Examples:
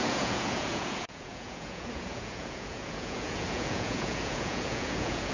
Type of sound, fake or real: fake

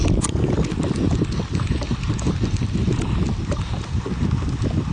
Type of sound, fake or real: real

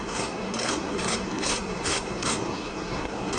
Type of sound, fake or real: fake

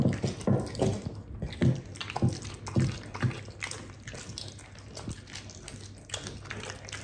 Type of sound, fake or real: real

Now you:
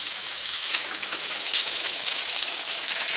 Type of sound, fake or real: fake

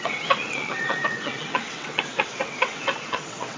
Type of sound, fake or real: fake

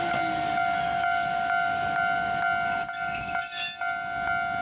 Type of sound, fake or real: real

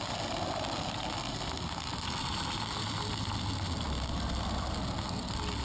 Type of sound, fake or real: real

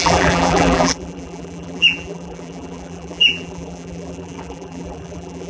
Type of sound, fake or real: fake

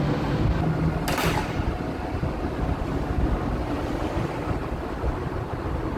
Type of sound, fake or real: real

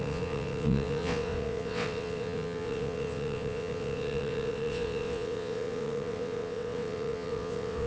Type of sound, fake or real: fake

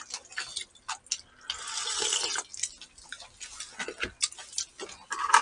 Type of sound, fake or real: real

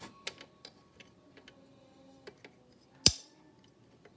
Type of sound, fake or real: real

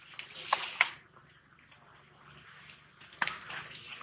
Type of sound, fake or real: real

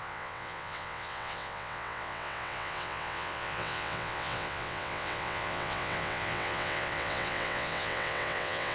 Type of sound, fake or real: fake